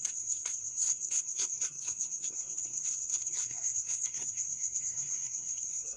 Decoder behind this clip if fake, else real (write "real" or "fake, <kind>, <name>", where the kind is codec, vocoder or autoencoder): fake, codec, SNAC